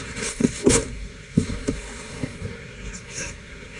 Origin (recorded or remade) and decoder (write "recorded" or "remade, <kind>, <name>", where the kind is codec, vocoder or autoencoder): remade, codec, SNAC